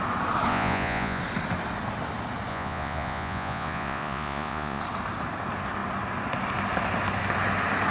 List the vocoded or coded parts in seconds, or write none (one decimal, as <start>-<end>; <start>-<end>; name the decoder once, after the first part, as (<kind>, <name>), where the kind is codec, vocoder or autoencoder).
0.5-1.2 (vocoder, Vocos); 2.5-4.8